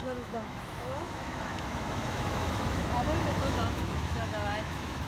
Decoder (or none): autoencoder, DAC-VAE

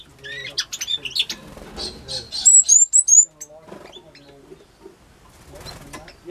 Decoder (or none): none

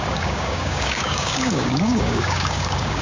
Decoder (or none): codec, DAC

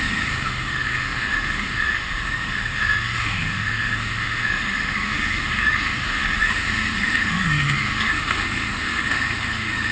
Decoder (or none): autoencoder, DAC-VAE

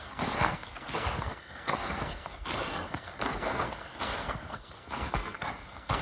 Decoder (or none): codec, SNAC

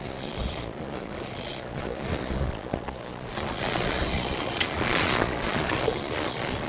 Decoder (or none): vocoder, Vocos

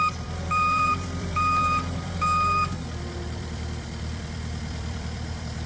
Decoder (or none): vocoder, BigVGAN v2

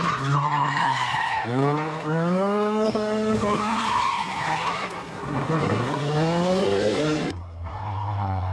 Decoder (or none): codec, SNAC